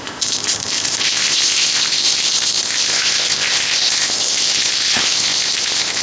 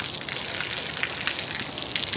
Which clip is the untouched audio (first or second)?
second